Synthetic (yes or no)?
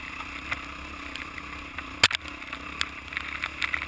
no